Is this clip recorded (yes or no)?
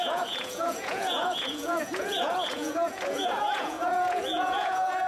no